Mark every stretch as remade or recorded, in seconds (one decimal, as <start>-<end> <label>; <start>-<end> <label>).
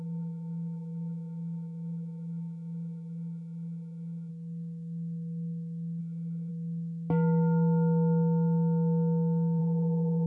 0.0-4.3 remade; 4.3-6.0 recorded; 6.0-6.5 remade; 6.5-9.6 recorded; 9.6-10.3 remade